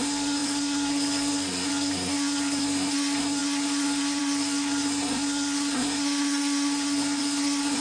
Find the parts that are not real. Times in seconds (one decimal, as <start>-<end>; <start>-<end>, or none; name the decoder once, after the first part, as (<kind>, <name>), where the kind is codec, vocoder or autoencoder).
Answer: 0.0-7.8 (codec, SNAC)